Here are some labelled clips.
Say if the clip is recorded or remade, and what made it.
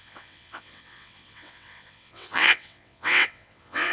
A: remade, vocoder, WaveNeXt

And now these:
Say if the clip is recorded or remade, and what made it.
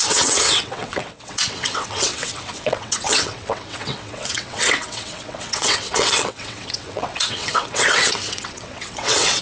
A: remade, vocoder, WaveNeXt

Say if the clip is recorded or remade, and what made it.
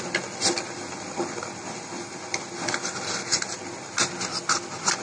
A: recorded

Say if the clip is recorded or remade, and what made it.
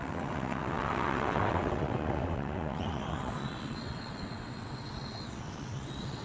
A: remade, vocoder, WaveNeXt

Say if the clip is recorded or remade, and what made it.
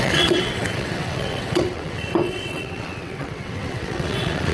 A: remade, vocoder, WaveNeXt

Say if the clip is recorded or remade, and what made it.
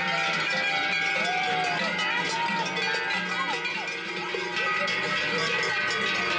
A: recorded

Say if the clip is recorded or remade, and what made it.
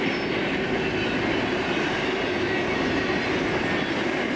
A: recorded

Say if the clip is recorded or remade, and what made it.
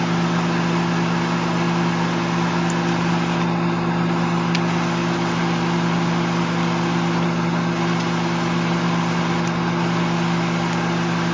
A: recorded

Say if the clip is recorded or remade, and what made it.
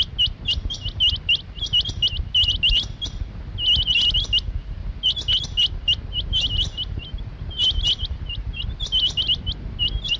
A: recorded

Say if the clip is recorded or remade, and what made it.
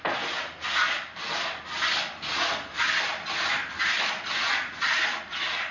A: recorded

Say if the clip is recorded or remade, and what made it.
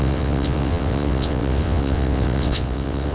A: remade, vocoder, WaveNeXt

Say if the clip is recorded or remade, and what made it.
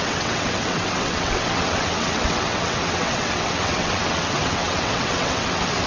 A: remade, vocoder, WaveNeXt